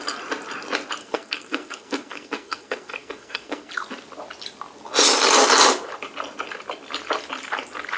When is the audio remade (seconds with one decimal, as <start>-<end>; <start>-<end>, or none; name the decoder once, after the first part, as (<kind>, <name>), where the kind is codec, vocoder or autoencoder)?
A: 1.0-3.7 (codec, SNAC)